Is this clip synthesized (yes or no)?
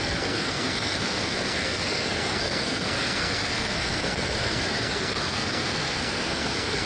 yes